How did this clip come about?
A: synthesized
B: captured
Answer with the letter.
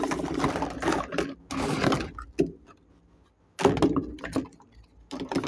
B